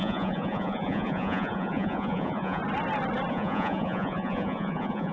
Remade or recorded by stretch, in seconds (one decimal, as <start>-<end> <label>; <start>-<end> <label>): 0.0-2.6 remade; 2.6-3.3 recorded; 3.3-5.1 remade